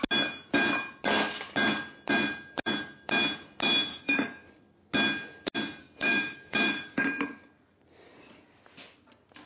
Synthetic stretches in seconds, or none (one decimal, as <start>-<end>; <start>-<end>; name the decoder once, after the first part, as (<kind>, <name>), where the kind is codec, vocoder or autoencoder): 3.9-4.5 (codec, DAC); 5.8-7.0